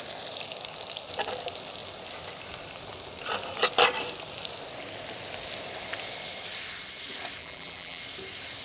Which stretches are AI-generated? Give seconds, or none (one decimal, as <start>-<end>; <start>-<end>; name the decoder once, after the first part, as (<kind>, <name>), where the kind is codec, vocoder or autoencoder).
7.4-8.0 (vocoder, BigVGAN v2)